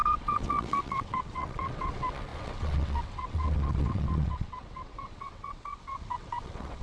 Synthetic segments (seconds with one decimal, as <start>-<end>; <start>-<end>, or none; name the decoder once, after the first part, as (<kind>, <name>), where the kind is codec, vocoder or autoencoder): 0.0-6.8 (vocoder, WaveNeXt)